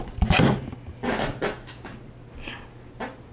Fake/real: real